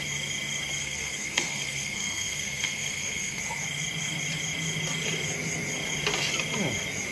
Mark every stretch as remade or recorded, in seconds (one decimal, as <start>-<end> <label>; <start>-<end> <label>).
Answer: 0.0-0.8 recorded; 0.8-3.4 remade; 3.4-7.1 recorded